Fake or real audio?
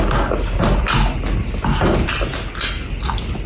real